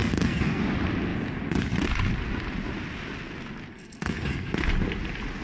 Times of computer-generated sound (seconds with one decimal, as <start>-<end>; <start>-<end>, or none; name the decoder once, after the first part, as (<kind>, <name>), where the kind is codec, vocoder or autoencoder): 0.0-0.6 (codec, SNAC); 3.7-4.7